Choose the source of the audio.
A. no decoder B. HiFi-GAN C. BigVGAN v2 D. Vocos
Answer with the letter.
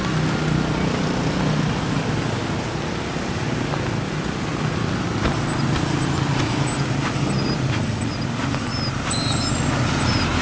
A